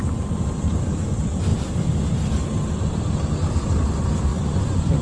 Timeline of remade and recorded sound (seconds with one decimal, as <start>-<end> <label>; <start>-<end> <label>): 0.0-4.3 recorded; 4.3-5.0 remade